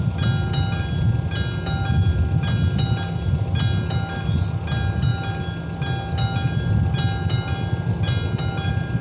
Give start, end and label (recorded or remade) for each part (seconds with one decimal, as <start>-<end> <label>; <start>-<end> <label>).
0.0-9.0 recorded